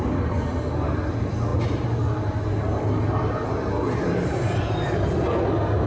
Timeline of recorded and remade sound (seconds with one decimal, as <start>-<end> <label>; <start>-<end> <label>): 0.0-5.9 recorded